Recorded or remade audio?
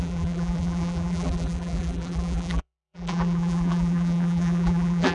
remade